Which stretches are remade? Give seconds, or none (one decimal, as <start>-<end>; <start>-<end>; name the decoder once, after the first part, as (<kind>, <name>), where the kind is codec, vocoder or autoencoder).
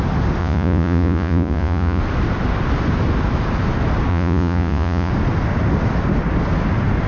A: 0.4-2.0 (vocoder, Vocos); 4.1-5.1